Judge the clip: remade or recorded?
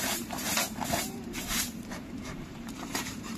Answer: remade